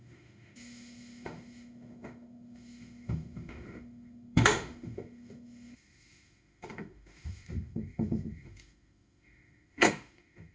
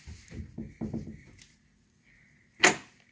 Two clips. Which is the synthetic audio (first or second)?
first